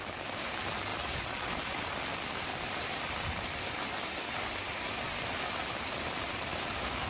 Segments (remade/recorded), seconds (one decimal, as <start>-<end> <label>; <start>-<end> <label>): 0.0-7.1 recorded